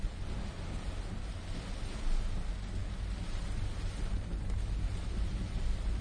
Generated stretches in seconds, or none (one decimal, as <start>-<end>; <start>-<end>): none